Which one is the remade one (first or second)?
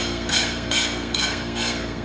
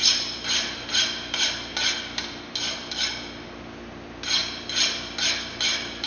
first